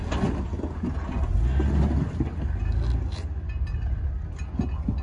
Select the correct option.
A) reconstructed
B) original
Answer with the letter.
B